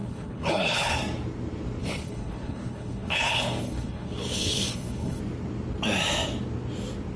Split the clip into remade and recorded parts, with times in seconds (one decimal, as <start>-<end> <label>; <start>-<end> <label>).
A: 0.0-1.0 remade; 1.0-1.8 recorded; 1.8-5.2 remade; 5.2-7.2 recorded